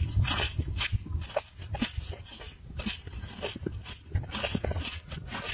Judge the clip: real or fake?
real